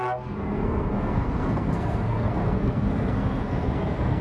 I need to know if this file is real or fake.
fake